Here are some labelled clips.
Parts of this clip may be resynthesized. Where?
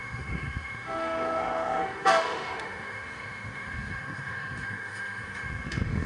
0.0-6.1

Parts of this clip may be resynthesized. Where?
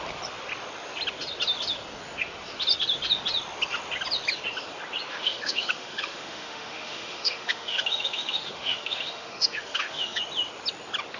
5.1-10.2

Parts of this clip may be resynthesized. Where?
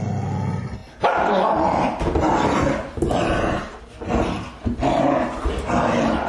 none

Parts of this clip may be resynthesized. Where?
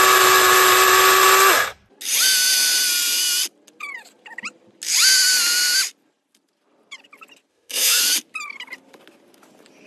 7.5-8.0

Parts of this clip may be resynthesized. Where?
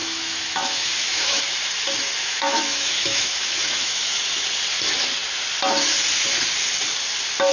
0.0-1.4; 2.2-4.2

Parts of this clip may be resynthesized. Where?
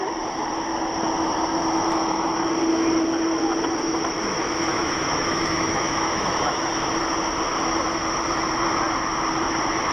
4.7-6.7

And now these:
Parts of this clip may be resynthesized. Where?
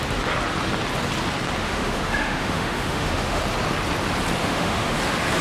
1.6-3.4; 4.4-5.0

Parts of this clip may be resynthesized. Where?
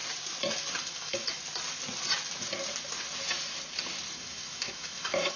0.8-1.4; 4.1-5.4